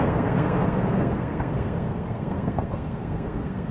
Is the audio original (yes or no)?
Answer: no